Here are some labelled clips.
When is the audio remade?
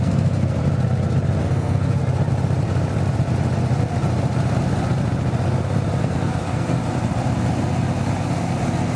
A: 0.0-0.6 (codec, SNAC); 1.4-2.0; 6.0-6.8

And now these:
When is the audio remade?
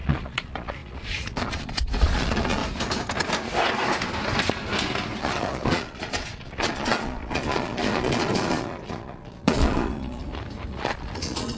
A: 0.0-2.6 (vocoder, Vocos); 5.2-10.2; 10.7-11.6